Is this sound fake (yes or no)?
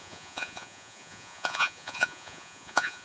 yes